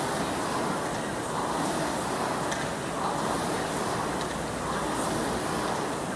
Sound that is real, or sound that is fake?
real